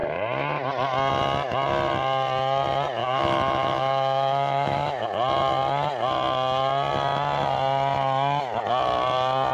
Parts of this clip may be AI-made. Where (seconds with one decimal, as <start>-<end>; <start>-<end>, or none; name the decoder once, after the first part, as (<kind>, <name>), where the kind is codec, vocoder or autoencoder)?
3.0-5.0 (autoencoder, DAC-VAE)